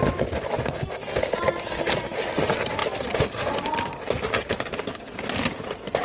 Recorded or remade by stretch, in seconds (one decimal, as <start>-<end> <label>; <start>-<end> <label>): 0.0-6.0 recorded

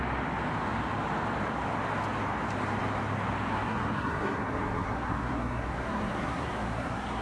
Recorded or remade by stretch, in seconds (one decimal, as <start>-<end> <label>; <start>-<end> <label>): 0.0-3.5 recorded; 3.5-7.2 remade

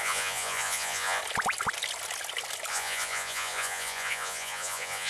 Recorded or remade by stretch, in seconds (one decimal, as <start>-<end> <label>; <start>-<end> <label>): 0.0-1.2 remade; 1.2-2.7 recorded; 2.7-5.1 remade

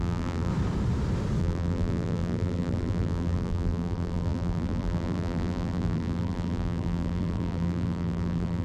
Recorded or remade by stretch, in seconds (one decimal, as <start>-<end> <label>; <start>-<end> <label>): 0.0-0.5 remade; 0.5-1.4 recorded; 1.4-8.6 remade

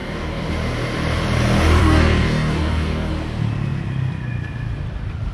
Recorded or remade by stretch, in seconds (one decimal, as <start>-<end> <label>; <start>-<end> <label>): 0.0-0.5 remade; 0.5-1.8 recorded; 1.8-3.1 remade; 3.1-5.3 recorded

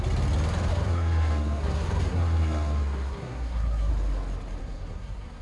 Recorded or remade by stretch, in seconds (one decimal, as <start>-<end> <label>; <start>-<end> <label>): 0.0-0.7 recorded; 0.7-3.9 remade; 3.9-4.6 recorded; 4.6-5.4 remade

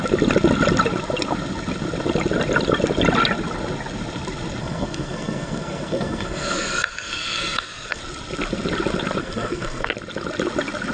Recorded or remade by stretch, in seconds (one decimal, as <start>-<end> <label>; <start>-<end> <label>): 0.0-4.6 recorded; 4.6-8.0 remade; 8.0-9.2 recorded; 9.2-9.9 remade; 9.9-10.9 recorded